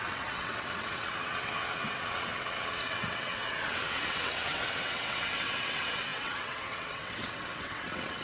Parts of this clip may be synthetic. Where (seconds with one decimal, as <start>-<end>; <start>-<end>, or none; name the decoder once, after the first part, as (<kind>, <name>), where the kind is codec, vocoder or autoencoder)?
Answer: 0.0-8.2 (vocoder, WaveNeXt)